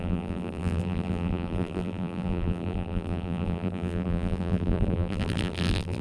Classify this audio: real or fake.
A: fake